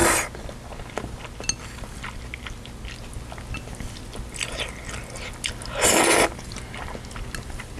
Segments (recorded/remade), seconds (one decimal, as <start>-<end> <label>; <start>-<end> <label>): 0.0-7.8 recorded